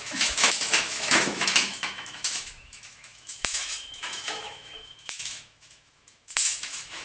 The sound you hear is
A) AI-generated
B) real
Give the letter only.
A